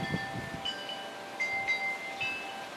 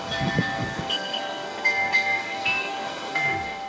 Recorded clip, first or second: first